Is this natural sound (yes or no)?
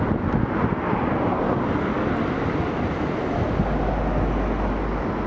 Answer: yes